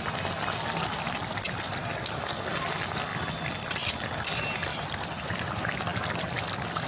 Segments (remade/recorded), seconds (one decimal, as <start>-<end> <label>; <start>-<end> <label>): 0.0-6.9 recorded

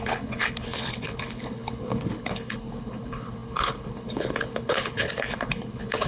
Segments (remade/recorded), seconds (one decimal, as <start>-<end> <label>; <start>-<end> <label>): 0.0-6.1 remade